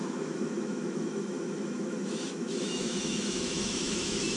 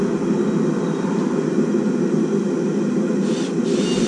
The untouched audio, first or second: second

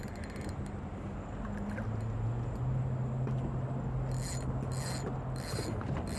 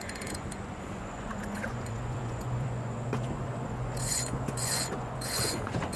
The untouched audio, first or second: first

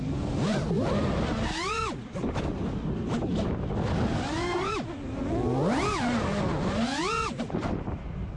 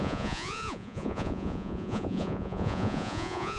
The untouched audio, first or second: first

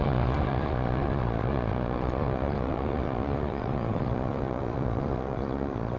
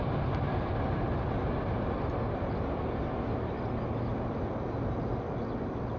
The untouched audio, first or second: second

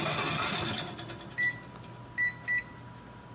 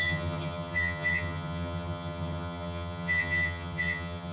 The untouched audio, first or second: first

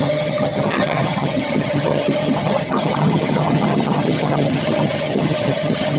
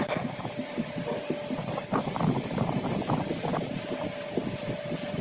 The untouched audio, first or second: second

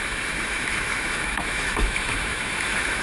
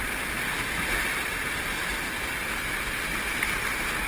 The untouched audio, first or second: second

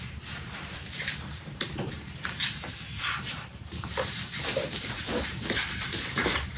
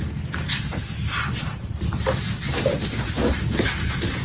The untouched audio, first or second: second